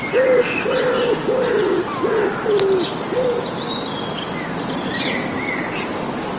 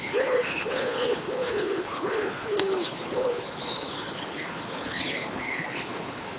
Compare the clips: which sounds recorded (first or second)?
first